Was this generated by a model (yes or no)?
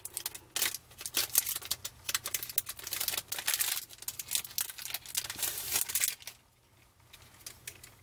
no